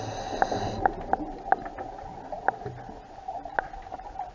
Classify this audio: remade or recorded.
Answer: recorded